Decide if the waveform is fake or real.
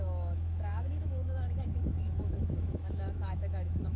fake